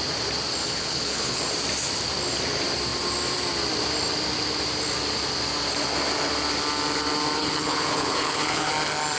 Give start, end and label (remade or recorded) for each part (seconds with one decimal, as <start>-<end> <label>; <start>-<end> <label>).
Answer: 0.0-0.6 recorded; 0.6-1.4 remade; 1.4-7.4 recorded; 7.4-8.7 remade; 8.7-9.2 recorded